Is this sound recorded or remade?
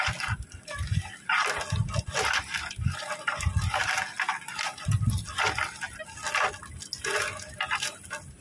recorded